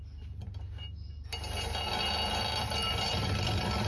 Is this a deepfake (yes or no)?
no